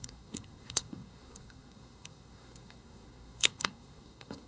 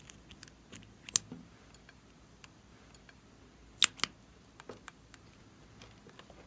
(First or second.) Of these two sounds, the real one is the second